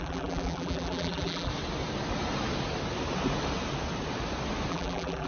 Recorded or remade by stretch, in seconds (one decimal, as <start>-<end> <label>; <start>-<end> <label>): 0.0-1.5 remade; 1.5-4.7 recorded; 4.7-5.3 remade